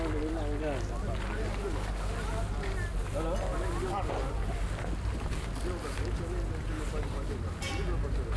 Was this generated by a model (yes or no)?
no